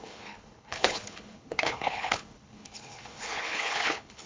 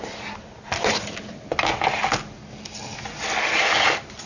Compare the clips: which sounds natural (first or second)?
second